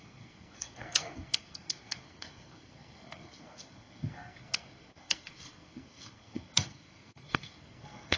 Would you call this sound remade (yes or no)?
yes